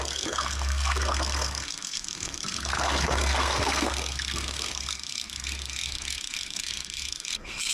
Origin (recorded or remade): remade